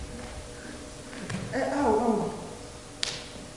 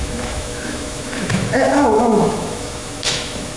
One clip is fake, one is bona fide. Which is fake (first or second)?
second